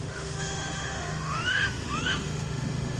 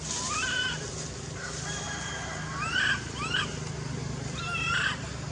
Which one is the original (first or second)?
second